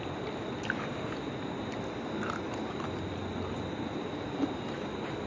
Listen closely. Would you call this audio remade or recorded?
recorded